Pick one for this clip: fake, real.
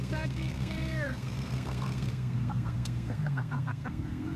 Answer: fake